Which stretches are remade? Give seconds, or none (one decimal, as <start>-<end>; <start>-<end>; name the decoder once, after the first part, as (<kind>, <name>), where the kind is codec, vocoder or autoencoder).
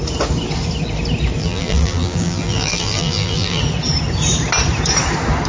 1.4-3.6 (vocoder, BigVGAN v2)